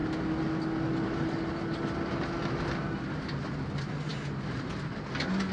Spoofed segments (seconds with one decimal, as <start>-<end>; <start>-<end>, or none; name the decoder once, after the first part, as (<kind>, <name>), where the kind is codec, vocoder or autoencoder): 4.1-4.7 (vocoder, BigVGAN v2)